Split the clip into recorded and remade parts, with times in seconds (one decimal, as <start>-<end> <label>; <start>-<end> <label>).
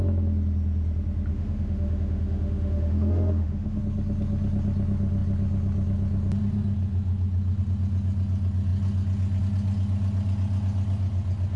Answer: 0.0-1.3 recorded; 1.3-3.8 remade; 3.8-11.6 recorded